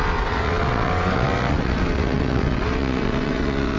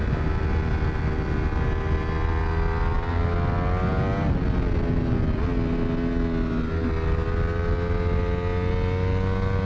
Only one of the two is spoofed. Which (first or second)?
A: first